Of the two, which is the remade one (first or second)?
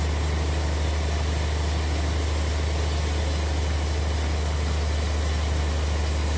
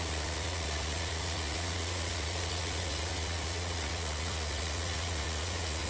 second